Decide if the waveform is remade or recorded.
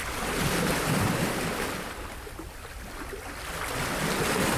recorded